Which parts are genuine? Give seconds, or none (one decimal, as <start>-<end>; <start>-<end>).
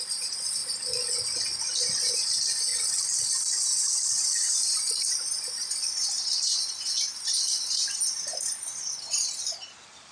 0.6-2.1; 2.7-3.6